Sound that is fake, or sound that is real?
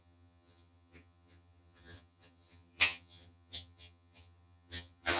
fake